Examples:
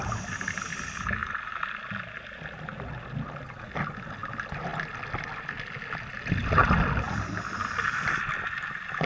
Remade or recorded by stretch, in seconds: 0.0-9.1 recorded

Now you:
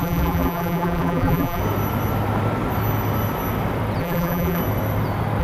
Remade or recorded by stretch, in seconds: 0.0-1.6 remade; 1.6-4.0 recorded; 4.0-4.6 remade; 4.6-5.4 recorded

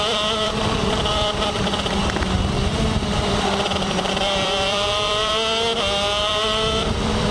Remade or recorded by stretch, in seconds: 0.0-5.3 remade; 5.3-6.2 recorded; 6.2-7.3 remade

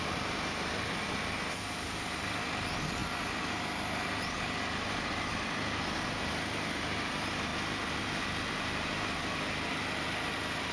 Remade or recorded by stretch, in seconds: 0.0-10.7 recorded

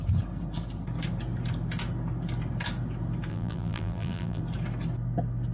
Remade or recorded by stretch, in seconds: 0.0-3.3 recorded; 3.3-4.4 remade; 4.4-5.5 recorded

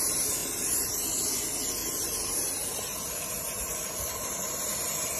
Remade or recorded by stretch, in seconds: 0.0-1.8 recorded; 1.8-5.2 remade